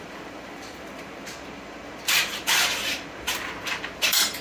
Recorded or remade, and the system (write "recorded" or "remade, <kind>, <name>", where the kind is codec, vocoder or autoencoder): remade, vocoder, BigVGAN v2